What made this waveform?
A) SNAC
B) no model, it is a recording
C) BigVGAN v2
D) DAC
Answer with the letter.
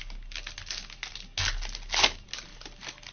B